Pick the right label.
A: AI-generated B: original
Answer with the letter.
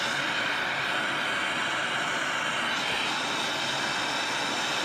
B